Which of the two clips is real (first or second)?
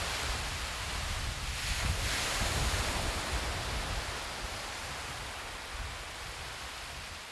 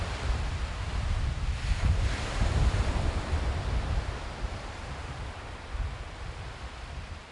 first